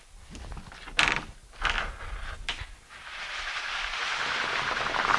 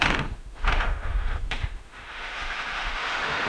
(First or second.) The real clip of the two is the first